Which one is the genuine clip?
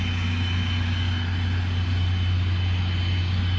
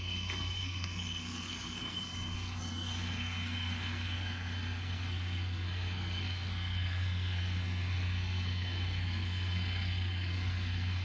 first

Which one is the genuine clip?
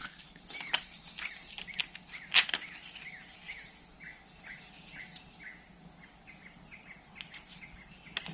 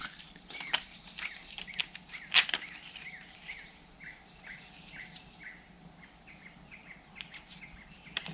first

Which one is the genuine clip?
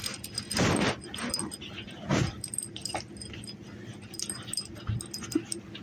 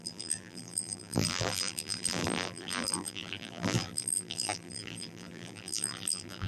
first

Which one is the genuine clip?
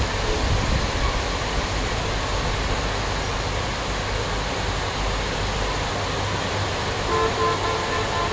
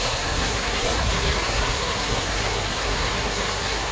first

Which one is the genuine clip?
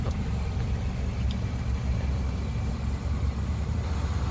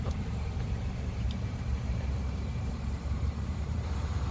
first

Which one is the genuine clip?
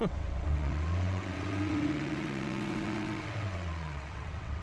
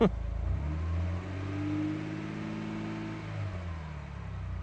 second